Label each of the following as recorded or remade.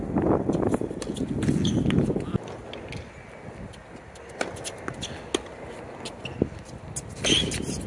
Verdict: recorded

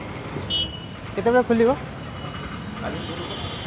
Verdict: recorded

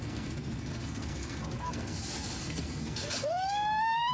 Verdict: remade